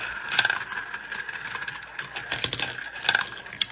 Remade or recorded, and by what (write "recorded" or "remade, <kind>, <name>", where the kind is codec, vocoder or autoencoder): recorded